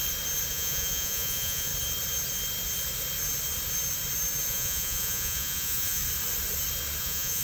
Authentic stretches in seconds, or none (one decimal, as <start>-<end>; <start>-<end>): 0.0-0.5; 1.7-4.5; 6.0-7.0